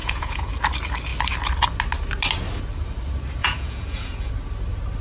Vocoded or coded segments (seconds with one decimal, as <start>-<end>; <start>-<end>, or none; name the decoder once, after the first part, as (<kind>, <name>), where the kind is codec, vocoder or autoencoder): 0.0-0.5 (vocoder, Vocos); 3.4-4.3

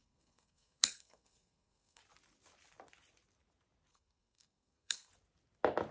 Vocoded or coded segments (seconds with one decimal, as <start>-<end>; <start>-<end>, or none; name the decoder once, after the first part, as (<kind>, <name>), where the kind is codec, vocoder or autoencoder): 0.0-2.0 (codec, SNAC); 3.9-5.1

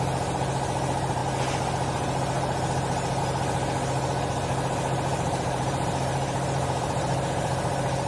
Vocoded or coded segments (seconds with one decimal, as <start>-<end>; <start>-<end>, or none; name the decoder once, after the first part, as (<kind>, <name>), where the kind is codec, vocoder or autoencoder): 5.1-8.1 (vocoder, BigVGAN v2)